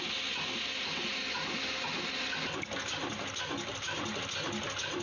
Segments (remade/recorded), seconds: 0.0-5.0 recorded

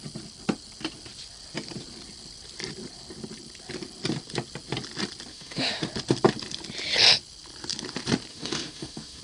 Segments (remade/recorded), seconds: 0.0-5.3 recorded; 5.3-5.8 remade; 5.8-8.3 recorded; 8.3-9.2 remade

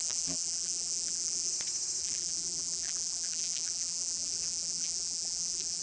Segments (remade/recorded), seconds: 0.0-1.5 remade; 1.5-2.0 recorded; 2.0-5.8 remade

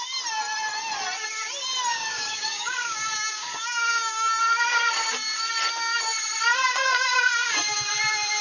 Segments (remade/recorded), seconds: 0.0-1.9 recorded; 1.9-4.4 remade; 4.4-6.5 recorded; 6.5-7.9 remade; 7.9-8.4 recorded

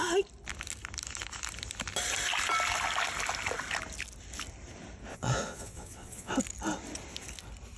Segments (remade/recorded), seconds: 0.0-5.1 recorded; 5.1-6.3 remade; 6.3-7.8 recorded

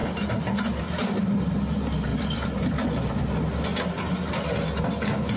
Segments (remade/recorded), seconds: 0.0-2.1 recorded; 2.1-3.2 remade; 3.2-5.4 recorded

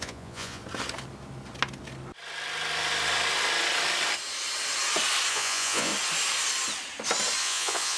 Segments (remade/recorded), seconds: 0.0-0.6 remade; 0.6-5.3 recorded; 5.3-5.9 remade; 5.9-7.4 recorded; 7.4-8.0 remade

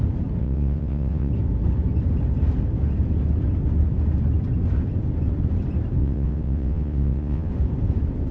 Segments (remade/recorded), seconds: 0.0-0.4 recorded; 0.4-1.3 remade; 1.3-6.0 recorded; 6.0-7.5 remade; 7.5-8.3 recorded